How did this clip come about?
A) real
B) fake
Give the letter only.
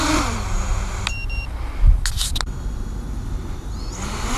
A